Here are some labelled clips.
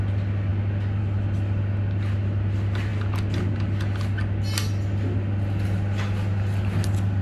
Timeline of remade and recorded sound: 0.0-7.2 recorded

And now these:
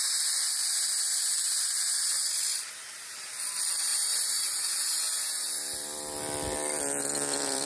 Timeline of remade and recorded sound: 0.0-3.9 recorded; 3.9-4.9 remade; 4.9-7.7 recorded

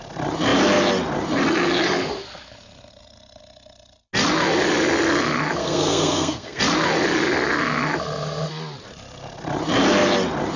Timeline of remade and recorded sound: 0.0-5.6 recorded; 5.6-6.6 remade; 6.6-10.6 recorded

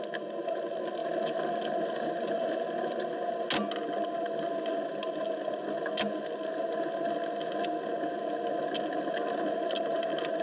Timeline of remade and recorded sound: 0.0-10.4 recorded